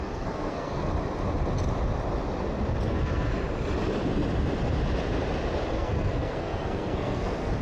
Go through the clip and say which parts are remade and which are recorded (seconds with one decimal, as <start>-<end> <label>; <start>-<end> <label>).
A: 0.0-0.9 remade; 0.9-2.9 recorded; 2.9-3.3 remade; 3.3-5.7 recorded; 5.7-7.6 remade